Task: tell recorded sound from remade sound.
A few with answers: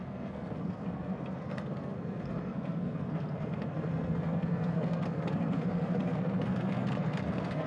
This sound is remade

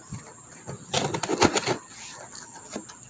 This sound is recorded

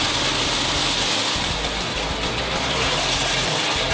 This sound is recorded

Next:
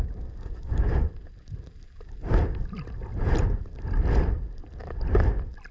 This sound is remade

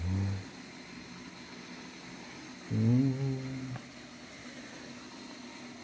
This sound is recorded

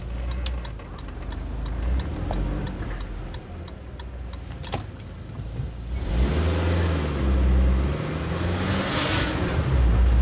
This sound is recorded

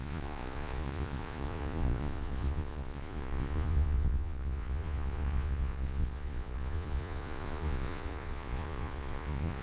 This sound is remade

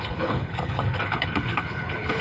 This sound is remade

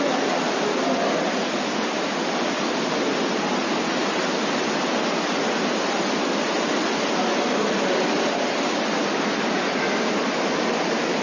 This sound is recorded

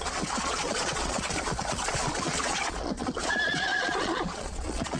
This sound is remade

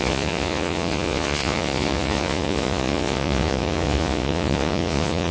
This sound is remade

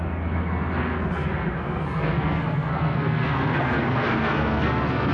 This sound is remade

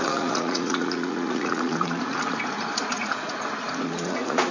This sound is remade